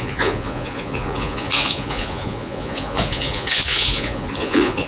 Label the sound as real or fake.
fake